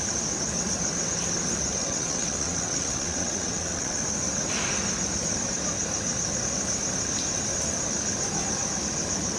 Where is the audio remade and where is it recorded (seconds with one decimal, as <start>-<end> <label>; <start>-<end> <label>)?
0.0-1.8 recorded; 1.8-4.0 remade; 4.0-9.4 recorded